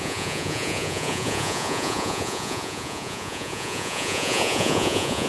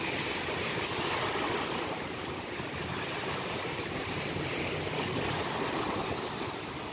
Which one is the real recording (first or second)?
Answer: second